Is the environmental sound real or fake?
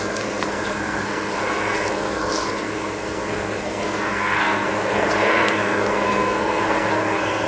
fake